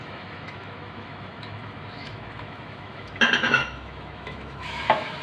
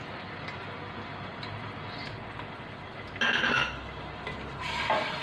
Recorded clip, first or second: second